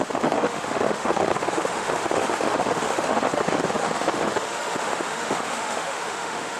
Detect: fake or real fake